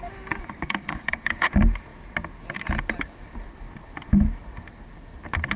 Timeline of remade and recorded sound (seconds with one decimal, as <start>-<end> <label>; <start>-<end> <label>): 0.0-0.4 recorded; 0.4-1.5 remade; 1.5-5.6 recorded